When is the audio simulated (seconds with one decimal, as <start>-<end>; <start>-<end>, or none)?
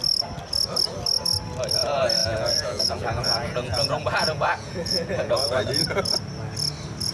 2.2-5.7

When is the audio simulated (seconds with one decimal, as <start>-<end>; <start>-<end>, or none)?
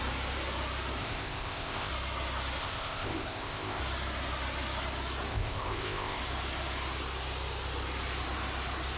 1.0-1.9; 2.6-3.8; 5.3-6.2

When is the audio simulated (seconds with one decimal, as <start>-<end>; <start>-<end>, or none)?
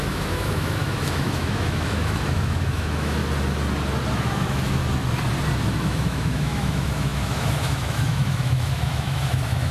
0.0-3.2; 4.1-4.8; 5.8-9.7